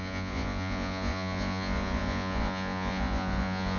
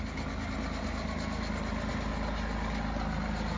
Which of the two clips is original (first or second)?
second